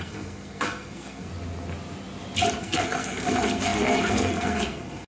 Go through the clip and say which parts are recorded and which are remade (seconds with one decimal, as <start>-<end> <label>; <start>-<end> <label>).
0.0-1.3 remade; 1.3-2.6 recorded; 2.6-5.1 remade